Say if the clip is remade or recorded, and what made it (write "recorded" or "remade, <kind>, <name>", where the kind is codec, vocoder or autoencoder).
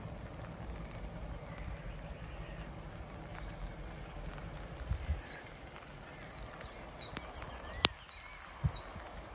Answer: recorded